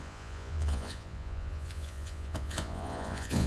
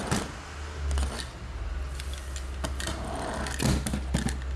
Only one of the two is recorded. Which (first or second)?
second